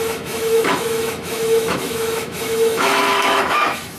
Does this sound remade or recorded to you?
remade